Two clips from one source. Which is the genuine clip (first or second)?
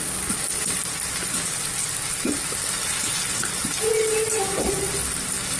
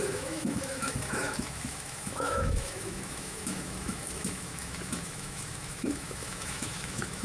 first